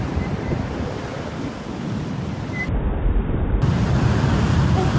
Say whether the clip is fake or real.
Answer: fake